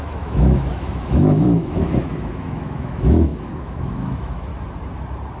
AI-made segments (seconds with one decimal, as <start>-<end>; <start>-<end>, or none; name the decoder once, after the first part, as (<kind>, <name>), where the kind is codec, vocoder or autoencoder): 0.0-4.5 (autoencoder, DAC-VAE)